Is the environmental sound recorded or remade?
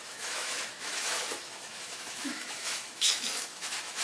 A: remade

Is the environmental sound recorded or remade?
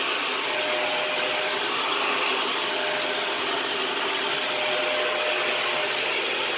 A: recorded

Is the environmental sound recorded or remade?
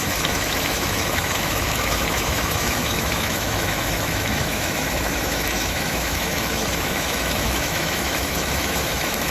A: remade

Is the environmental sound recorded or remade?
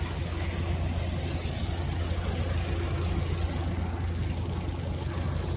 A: recorded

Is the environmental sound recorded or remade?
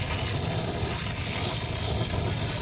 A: recorded